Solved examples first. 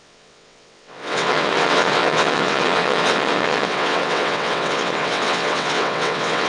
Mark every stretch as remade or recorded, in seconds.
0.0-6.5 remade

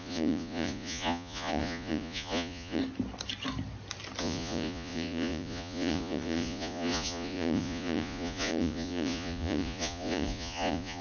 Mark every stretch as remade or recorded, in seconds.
0.0-2.8 remade; 2.8-4.2 recorded; 4.2-11.0 remade

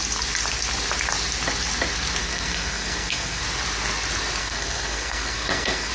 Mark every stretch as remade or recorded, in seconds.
0.0-2.2 recorded; 2.2-3.4 remade; 3.4-4.4 recorded; 4.4-5.9 remade

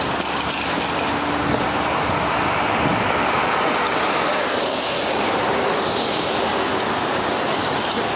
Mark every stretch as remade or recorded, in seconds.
0.0-8.2 recorded

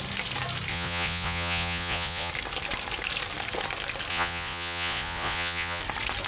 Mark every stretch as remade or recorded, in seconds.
0.0-0.7 recorded; 0.7-2.3 remade; 2.3-4.1 recorded; 4.1-5.8 remade; 5.8-6.3 recorded

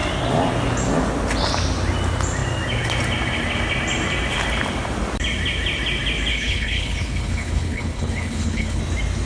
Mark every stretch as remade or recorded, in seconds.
0.0-6.3 recorded; 6.3-8.8 remade; 8.8-9.3 recorded